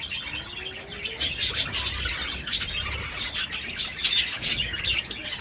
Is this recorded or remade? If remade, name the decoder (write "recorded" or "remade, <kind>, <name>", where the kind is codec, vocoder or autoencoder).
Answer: recorded